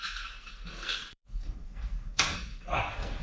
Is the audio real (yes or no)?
no